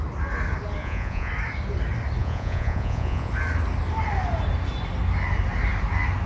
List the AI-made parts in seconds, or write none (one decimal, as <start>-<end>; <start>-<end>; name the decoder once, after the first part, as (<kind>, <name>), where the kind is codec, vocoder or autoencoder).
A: 0.8-1.3 (vocoder, Vocos); 2.2-3.3